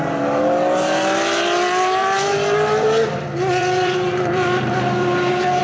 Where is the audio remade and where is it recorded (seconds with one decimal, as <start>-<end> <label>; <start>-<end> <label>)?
0.0-2.0 recorded; 2.0-5.6 remade